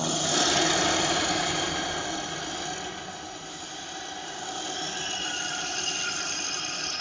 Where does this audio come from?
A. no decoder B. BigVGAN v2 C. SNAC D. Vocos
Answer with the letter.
A